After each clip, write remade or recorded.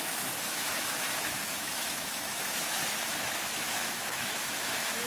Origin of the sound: remade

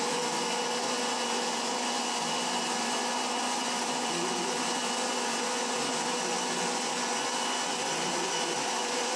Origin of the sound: remade